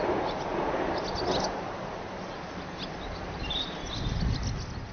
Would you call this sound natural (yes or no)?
yes